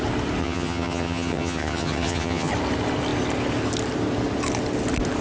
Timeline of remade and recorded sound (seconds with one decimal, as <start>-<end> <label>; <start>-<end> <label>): 0.0-0.4 recorded; 0.4-2.5 remade; 2.5-5.2 recorded